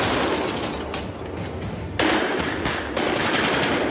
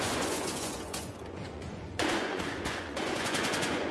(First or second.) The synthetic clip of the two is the second